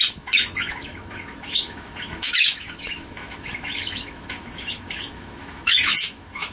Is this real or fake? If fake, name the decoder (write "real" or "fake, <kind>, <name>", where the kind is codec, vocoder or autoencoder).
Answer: fake, autoencoder, DAC-VAE